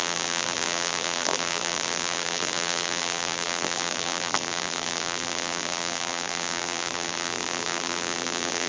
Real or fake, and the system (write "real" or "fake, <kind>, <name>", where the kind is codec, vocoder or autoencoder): fake, vocoder, BigVGAN v2